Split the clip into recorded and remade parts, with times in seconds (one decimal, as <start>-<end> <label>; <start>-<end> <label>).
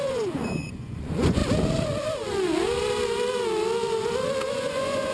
0.0-1.4 remade; 1.4-4.5 recorded; 4.5-5.1 remade